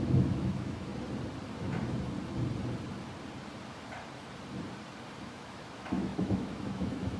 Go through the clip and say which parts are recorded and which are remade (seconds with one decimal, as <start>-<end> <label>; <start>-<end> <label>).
0.0-0.9 remade; 0.9-5.2 recorded; 5.2-7.2 remade